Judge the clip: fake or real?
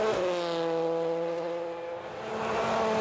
real